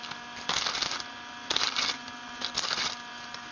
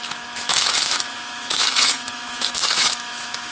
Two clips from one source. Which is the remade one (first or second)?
second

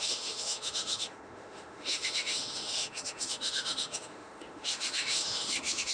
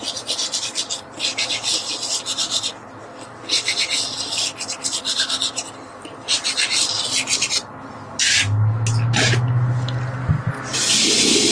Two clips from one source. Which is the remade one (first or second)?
first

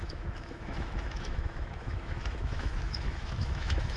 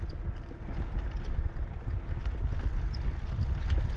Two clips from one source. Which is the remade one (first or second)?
first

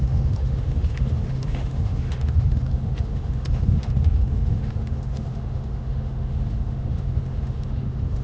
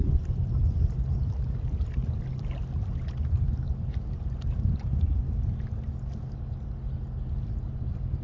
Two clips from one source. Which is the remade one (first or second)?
first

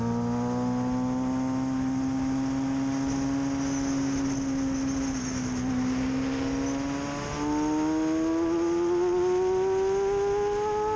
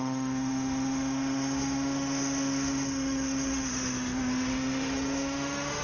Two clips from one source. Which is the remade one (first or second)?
second